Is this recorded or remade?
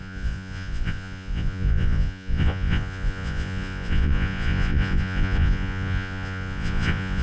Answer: remade